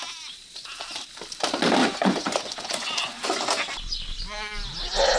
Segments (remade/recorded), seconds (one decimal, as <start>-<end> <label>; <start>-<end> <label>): 0.0-1.8 recorded; 1.8-3.4 remade; 3.4-5.2 recorded